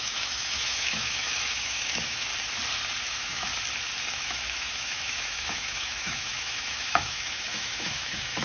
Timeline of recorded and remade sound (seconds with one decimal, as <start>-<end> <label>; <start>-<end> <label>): 0.0-2.3 remade; 2.3-3.0 recorded; 3.0-3.5 remade; 3.5-4.1 recorded; 4.1-8.4 remade